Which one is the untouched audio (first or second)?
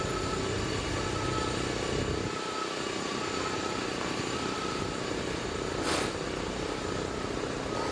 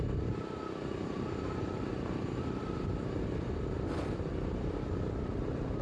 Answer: first